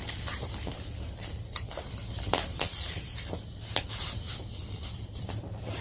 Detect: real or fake fake